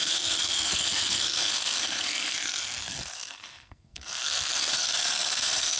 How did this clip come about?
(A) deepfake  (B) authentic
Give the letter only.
A